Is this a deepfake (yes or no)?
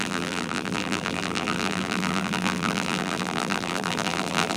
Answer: yes